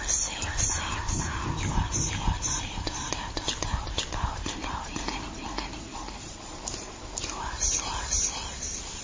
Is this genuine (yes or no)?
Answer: yes